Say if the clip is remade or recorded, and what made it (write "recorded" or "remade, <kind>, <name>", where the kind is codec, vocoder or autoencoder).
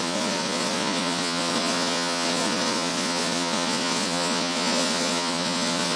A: remade, vocoder, Vocos